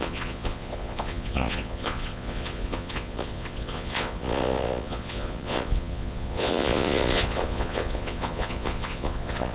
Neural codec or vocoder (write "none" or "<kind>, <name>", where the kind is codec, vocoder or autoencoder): vocoder, Vocos